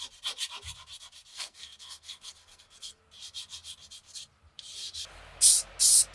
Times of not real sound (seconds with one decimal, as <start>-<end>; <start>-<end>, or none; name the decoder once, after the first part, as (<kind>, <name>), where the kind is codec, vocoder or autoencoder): 1.3-3.0 (codec, SNAC)